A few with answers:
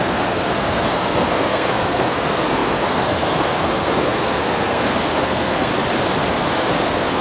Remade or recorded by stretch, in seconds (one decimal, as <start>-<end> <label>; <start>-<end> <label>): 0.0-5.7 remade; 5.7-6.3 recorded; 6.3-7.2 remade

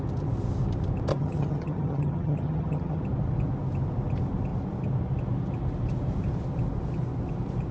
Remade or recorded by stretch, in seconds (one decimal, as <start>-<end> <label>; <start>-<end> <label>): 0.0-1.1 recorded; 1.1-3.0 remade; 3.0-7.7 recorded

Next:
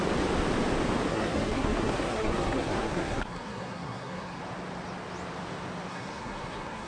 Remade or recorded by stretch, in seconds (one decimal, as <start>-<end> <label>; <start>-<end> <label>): 0.0-1.1 recorded; 1.1-4.4 remade; 4.4-5.9 recorded; 5.9-6.9 remade

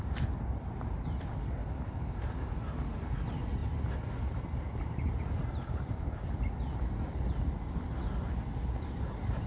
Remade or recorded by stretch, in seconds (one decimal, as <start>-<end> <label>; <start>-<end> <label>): 0.0-9.5 recorded

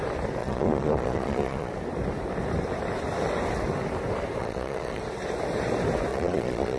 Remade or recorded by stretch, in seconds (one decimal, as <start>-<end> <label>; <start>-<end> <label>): 0.0-0.4 recorded; 0.4-1.7 remade; 1.7-4.4 recorded; 4.4-5.0 remade; 5.0-6.1 recorded; 6.1-6.8 remade

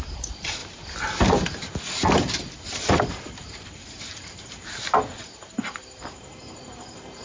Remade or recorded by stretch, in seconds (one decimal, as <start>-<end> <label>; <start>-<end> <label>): 0.0-0.6 remade; 0.6-3.0 recorded; 3.0-7.2 remade

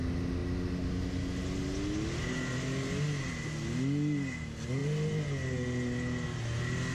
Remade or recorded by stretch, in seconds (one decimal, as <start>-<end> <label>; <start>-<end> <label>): 0.0-6.9 recorded